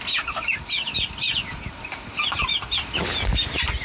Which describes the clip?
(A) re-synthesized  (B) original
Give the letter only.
B